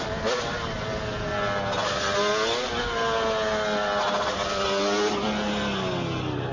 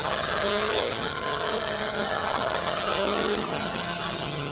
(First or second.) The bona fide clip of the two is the first